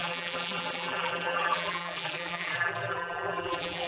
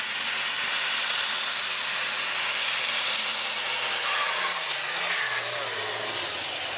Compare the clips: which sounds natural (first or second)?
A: second